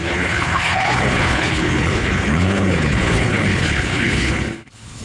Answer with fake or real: fake